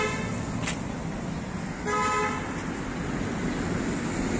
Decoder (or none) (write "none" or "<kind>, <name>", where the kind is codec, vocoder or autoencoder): none